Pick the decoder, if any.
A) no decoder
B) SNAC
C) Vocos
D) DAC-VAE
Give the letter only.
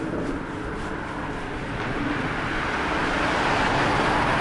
A